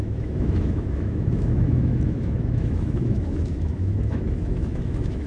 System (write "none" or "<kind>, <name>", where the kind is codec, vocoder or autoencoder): autoencoder, DAC-VAE